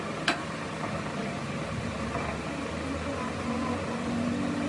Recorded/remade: recorded